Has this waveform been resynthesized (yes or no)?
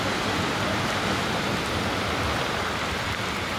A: yes